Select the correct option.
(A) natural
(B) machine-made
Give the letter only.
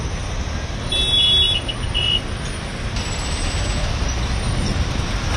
A